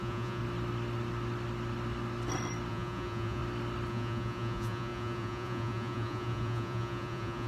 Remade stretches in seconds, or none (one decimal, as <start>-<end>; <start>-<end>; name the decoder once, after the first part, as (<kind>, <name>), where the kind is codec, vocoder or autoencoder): 0.0-0.4 (vocoder, Vocos); 2.7-3.4; 3.9-7.5